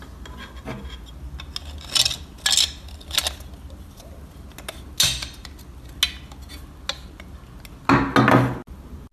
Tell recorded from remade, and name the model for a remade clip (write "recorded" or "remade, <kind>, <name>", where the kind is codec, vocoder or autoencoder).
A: recorded